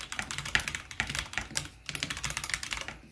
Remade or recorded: remade